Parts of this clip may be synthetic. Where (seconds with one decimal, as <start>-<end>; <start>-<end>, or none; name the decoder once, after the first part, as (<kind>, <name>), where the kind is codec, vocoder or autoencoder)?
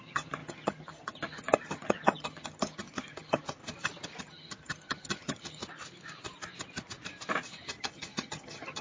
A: 0.0-3.6 (vocoder, HiFi-GAN); 4.2-5.6; 7.8-8.8